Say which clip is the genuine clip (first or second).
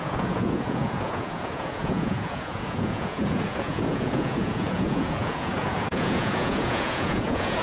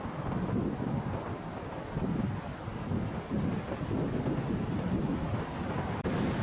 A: second